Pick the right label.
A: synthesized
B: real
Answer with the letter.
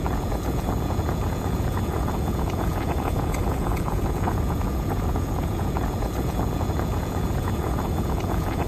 A